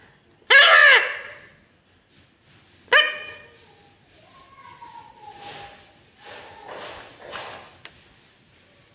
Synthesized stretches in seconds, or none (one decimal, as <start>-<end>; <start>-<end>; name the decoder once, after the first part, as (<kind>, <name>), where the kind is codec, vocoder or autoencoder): none